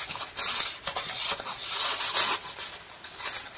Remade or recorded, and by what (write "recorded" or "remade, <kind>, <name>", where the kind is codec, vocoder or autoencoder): recorded